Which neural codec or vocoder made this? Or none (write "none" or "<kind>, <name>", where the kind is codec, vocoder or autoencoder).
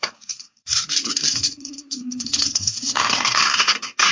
codec, SNAC